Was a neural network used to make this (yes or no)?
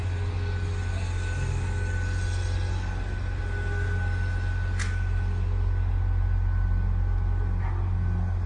no